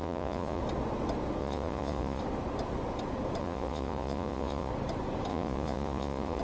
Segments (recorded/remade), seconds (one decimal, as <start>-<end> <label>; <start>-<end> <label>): 0.0-0.6 remade; 0.6-1.4 recorded; 1.4-2.2 remade; 2.2-3.4 recorded; 3.4-4.7 remade; 4.7-5.3 recorded; 5.3-6.4 remade